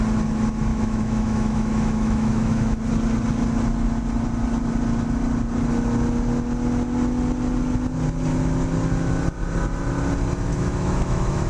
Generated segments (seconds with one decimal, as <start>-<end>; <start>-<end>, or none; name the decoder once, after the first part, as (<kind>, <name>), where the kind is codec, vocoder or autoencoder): 0.7-2.8 (autoencoder, DAC-VAE); 10.5-11.5

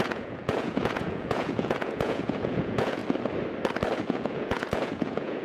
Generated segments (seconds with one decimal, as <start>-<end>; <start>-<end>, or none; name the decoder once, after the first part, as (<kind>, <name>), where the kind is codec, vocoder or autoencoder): 0.0-3.0 (vocoder, Vocos); 4.0-5.4

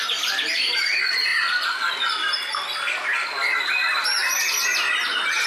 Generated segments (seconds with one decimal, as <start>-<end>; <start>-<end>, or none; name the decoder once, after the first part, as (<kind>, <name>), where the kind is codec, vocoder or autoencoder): 1.3-4.6 (vocoder, BigVGAN v2)